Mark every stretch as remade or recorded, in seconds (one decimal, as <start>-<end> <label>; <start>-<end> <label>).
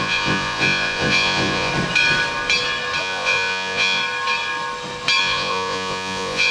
0.0-1.7 remade; 1.7-3.0 recorded; 3.0-4.0 remade; 4.0-5.2 recorded; 5.2-6.5 remade